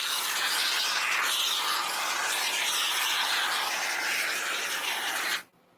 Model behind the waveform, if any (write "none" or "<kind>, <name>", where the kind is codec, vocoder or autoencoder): none